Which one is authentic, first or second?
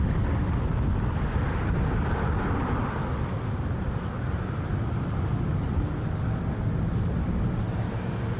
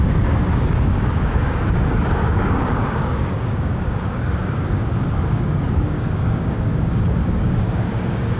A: first